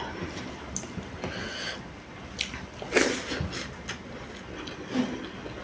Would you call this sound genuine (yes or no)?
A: yes